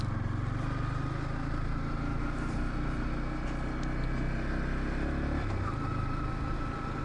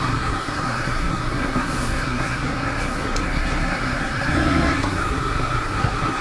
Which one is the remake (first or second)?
second